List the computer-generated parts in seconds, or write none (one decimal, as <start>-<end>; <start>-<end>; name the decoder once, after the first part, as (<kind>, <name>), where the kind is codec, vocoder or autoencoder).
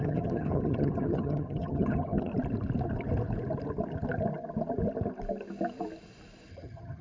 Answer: 0.0-2.3 (vocoder, HiFi-GAN); 6.5-7.0